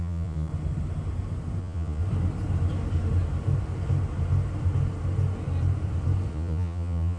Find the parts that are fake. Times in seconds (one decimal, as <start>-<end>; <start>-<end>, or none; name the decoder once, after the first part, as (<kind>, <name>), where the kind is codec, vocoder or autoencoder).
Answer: 0.0-0.5 (vocoder, Vocos); 1.6-2.0; 6.3-7.2